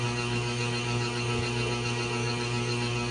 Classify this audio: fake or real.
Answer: fake